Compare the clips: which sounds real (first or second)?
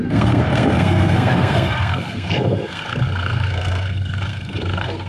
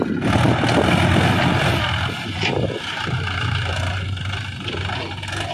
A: second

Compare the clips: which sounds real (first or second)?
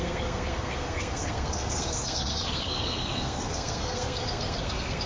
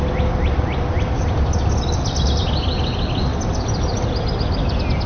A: second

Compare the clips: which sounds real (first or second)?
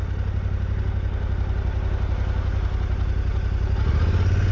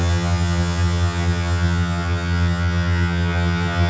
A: first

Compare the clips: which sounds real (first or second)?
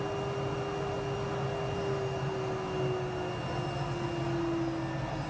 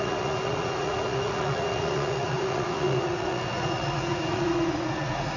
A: first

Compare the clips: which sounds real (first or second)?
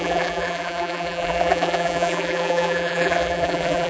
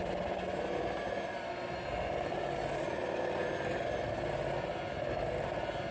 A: second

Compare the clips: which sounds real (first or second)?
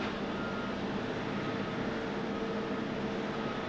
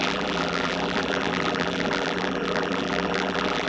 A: first